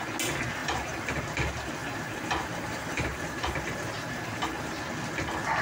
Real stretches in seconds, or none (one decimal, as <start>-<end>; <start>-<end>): 0.0-0.6; 1.2-1.8; 4.8-5.6

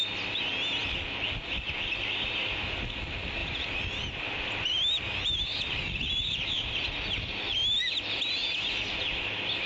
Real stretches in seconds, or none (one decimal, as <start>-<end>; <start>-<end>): 0.0-3.4; 6.7-9.7

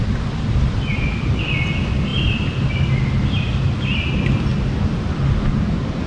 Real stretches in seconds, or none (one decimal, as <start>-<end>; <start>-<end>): 0.0-6.1

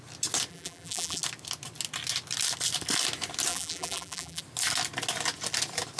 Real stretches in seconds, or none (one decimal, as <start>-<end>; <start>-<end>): 0.0-0.5; 1.2-3.5; 4.4-6.0

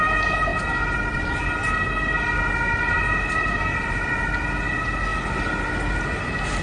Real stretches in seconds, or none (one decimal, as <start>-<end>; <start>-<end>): 0.0-6.6

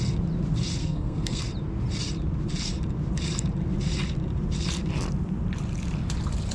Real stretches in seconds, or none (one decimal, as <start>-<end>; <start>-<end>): 0.0-0.8; 1.4-6.5

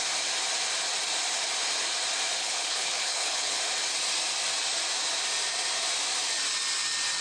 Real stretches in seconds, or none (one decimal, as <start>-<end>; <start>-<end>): 0.0-2.4; 3.6-7.2